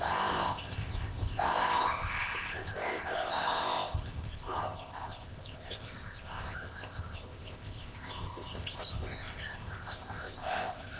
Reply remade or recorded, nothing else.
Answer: remade